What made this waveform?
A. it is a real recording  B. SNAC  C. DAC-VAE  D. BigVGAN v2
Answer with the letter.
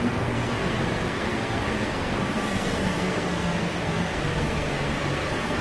B